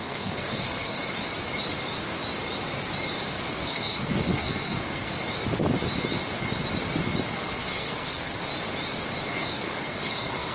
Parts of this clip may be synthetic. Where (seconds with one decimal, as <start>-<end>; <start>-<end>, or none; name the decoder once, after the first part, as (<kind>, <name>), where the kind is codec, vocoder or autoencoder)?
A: 0.0-1.0 (codec, SNAC); 3.3-5.1; 7.3-8.5; 9.2-10.5